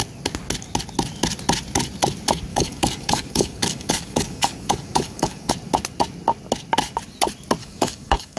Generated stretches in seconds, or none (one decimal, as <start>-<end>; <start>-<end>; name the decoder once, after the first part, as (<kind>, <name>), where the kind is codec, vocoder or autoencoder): 2.5-5.5 (codec, DAC); 7.6-8.4